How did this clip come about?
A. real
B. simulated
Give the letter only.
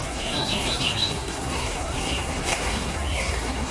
B